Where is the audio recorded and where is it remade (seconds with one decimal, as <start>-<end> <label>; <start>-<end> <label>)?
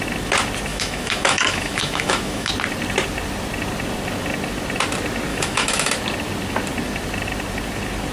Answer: 0.0-0.7 recorded; 0.7-2.5 remade; 2.5-5.3 recorded; 5.3-5.9 remade; 5.9-8.1 recorded